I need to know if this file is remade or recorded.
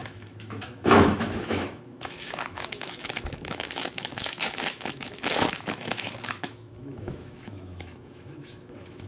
remade